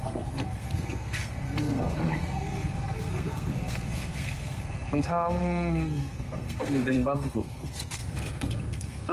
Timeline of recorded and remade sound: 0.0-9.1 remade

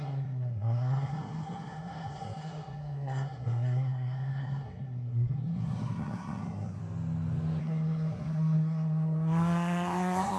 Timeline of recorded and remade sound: 0.0-6.8 remade; 6.8-7.6 recorded; 7.6-10.4 remade

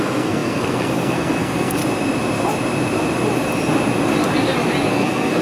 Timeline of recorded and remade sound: 0.0-1.8 remade; 1.8-4.9 recorded; 4.9-5.4 remade